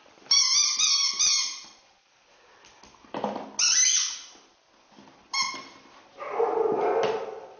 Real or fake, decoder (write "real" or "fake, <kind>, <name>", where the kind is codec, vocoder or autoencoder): real